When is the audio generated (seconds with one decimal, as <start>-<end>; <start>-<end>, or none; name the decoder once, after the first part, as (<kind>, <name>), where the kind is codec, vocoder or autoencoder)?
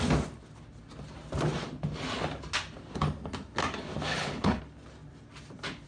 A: 4.1-4.6 (codec, HILCodec)